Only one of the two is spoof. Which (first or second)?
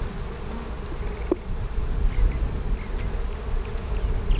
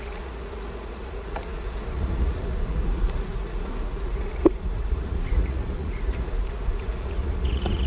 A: second